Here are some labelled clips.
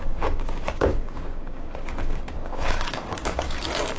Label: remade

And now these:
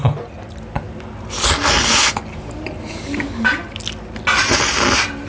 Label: recorded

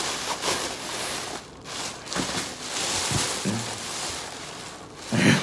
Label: recorded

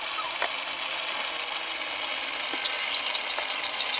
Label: recorded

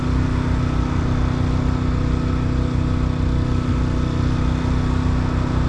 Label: recorded